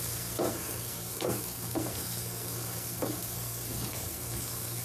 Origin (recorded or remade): remade